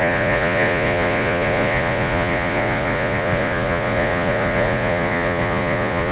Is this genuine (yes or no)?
no